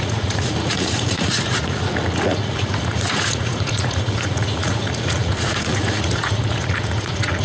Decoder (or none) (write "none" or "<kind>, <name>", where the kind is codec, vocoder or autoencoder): vocoder, Vocos